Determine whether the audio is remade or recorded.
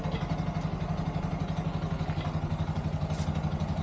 recorded